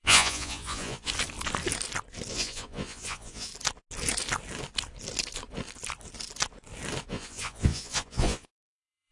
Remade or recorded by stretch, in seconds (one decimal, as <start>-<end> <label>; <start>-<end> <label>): 0.0-1.1 remade; 1.1-2.3 recorded; 2.3-3.5 remade; 3.5-7.1 recorded; 7.1-9.1 remade